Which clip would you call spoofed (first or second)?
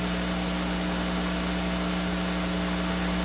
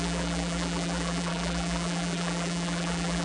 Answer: second